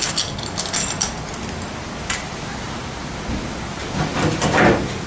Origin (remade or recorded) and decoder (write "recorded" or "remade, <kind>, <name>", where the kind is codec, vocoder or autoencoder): recorded